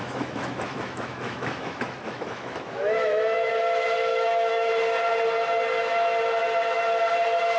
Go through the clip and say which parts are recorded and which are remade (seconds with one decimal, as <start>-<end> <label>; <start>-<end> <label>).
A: 0.0-3.5 remade; 3.5-4.1 recorded; 4.1-4.7 remade; 4.7-7.6 recorded